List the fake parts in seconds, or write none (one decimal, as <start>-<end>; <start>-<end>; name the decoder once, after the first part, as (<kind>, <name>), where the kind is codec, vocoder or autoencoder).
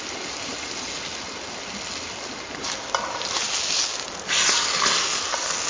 none